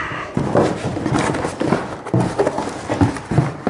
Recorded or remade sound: recorded